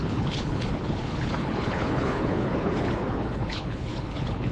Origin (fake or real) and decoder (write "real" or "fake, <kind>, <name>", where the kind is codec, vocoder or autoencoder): fake, codec, HILCodec